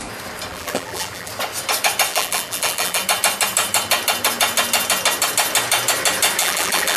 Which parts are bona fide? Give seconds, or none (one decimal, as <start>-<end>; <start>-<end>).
0.0-0.5; 1.3-2.1; 3.0-6.4